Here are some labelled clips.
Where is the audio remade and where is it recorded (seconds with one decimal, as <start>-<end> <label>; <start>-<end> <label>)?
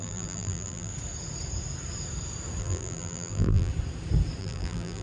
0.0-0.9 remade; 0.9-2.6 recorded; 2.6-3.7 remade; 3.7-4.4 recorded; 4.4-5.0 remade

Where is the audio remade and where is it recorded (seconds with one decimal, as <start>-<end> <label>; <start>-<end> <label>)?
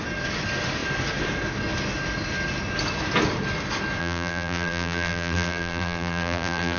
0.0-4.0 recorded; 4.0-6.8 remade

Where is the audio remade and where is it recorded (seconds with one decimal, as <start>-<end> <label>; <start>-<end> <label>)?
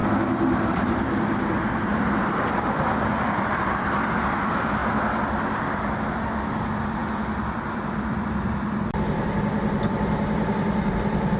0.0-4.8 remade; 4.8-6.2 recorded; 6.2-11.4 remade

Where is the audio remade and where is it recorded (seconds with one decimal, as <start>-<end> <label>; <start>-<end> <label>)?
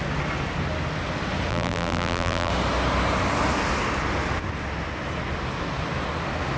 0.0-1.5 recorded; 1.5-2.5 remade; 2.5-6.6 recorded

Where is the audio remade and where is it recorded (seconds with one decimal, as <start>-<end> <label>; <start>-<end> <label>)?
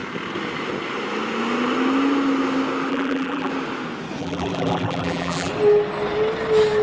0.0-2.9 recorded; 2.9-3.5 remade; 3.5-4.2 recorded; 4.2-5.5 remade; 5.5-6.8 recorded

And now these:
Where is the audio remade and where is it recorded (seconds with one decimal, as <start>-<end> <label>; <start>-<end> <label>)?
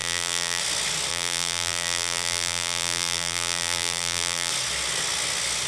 0.0-0.6 remade; 0.6-1.1 recorded; 1.1-4.5 remade; 4.5-5.7 recorded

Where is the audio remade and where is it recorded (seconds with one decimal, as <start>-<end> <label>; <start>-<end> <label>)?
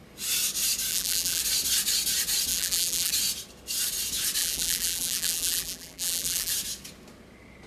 0.0-0.9 recorded; 0.9-1.4 remade; 1.4-2.5 recorded; 2.5-3.1 remade; 3.1-4.4 recorded; 4.4-6.5 remade; 6.5-7.7 recorded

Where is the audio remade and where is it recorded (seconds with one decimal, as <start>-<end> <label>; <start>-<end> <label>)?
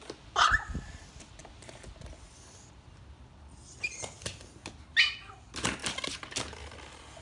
0.0-7.2 recorded